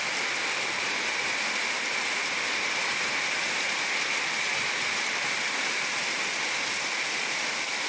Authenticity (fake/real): real